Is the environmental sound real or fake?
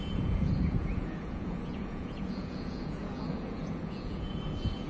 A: fake